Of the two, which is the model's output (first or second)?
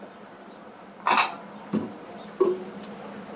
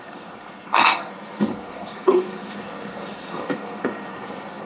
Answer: second